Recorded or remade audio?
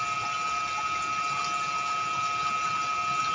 recorded